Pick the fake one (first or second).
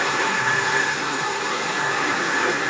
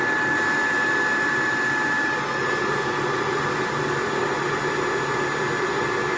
first